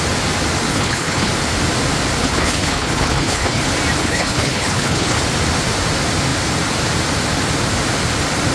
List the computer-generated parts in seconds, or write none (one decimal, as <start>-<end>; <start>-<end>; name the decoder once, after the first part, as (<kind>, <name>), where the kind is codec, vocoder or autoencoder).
0.7-1.3 (codec, HILCodec); 2.2-3.6; 4.0-5.2